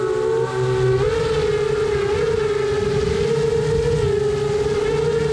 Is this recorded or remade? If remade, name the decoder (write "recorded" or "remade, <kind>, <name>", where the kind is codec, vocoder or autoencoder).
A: recorded